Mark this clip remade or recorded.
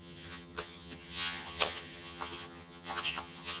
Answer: remade